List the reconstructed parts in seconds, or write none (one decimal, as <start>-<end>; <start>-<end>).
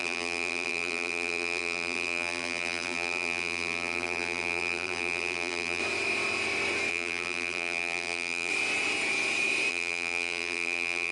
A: 0.0-5.8; 6.9-8.5; 9.7-11.1